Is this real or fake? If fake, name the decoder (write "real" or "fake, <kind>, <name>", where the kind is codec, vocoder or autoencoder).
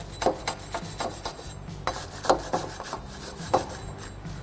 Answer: real